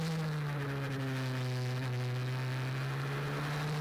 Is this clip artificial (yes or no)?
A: no